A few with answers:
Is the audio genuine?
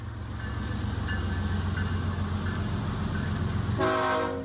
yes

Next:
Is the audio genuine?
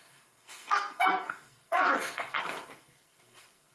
no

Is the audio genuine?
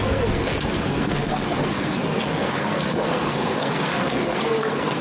no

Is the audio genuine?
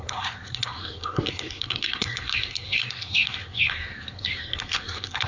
no